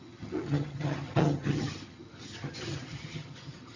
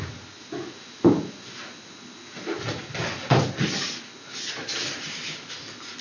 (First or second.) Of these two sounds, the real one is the second